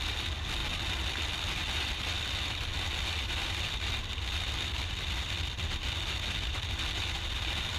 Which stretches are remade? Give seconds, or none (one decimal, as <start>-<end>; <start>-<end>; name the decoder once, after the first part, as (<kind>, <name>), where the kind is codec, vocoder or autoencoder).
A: none